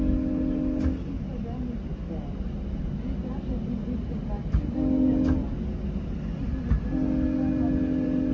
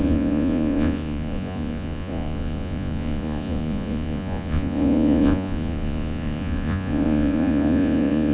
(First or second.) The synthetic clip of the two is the second